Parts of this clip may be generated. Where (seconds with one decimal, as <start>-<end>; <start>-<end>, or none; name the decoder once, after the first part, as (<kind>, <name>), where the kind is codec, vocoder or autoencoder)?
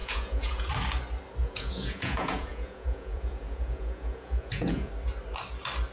0.0-0.7 (vocoder, Vocos); 1.4-4.9